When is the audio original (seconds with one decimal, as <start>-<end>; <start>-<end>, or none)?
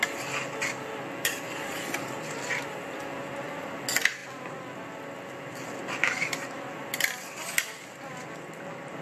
0.0-9.0